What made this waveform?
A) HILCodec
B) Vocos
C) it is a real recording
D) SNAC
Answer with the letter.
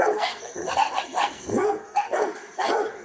D